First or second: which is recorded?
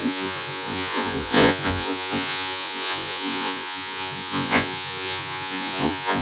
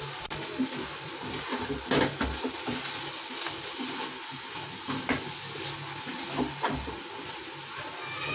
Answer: second